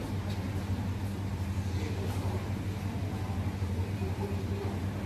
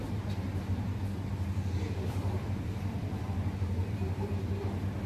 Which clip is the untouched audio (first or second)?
first